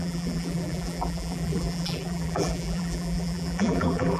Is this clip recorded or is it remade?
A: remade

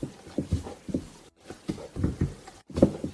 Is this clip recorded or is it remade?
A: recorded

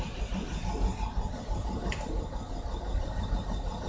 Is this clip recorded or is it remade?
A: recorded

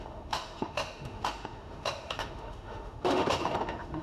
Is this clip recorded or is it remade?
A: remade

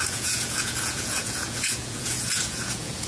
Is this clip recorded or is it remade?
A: remade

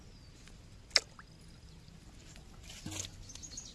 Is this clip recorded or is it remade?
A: recorded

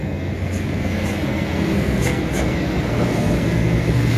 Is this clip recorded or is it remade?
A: remade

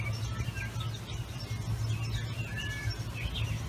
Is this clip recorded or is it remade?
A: recorded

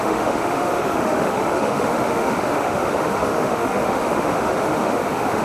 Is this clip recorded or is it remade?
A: remade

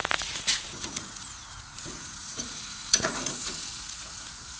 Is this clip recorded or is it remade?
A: remade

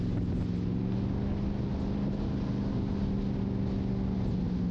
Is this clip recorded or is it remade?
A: recorded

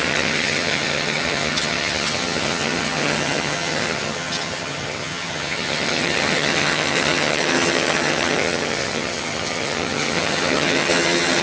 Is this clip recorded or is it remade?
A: remade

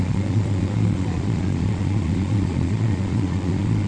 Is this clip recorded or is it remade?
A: remade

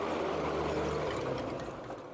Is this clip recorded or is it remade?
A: recorded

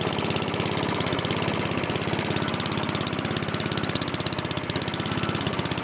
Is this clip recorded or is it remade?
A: recorded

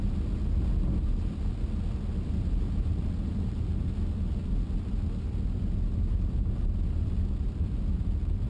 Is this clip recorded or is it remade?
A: recorded